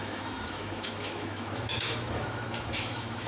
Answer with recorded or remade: remade